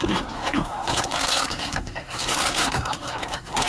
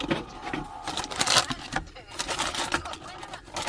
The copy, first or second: first